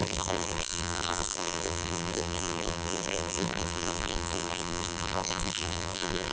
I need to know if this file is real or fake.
fake